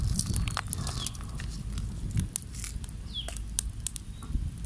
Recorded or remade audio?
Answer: recorded